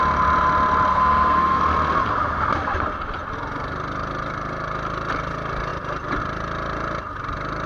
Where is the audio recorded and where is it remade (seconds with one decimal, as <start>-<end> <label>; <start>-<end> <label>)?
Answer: 0.0-0.9 recorded; 0.9-1.6 remade; 1.6-7.7 recorded